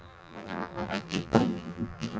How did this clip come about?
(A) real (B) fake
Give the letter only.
B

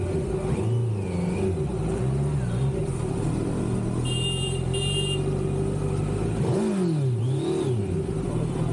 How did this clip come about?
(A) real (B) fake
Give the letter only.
A